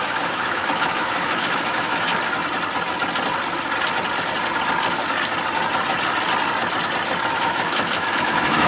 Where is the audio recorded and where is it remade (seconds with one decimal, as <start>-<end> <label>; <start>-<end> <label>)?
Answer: 0.0-2.1 remade; 2.1-7.2 recorded; 7.2-8.7 remade